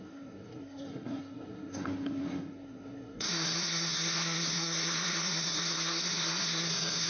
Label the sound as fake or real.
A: fake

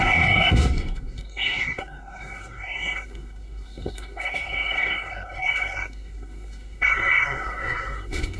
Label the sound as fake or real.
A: fake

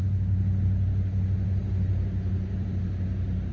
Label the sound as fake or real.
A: real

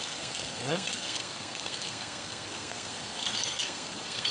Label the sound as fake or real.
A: fake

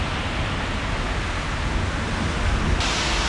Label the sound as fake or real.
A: real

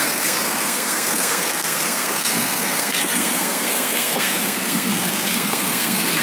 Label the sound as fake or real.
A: fake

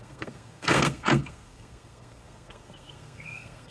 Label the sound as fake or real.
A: fake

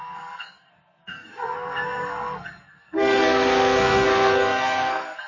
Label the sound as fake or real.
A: fake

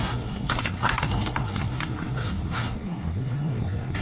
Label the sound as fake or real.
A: fake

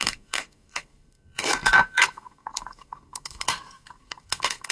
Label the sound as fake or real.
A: fake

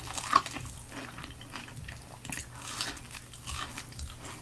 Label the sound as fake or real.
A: real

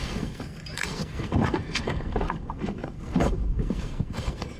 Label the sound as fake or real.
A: fake